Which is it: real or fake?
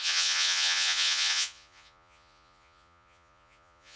fake